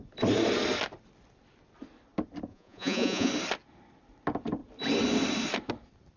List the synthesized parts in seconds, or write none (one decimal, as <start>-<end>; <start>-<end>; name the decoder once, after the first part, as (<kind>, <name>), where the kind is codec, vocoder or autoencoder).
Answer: 2.5-3.3 (vocoder, Vocos)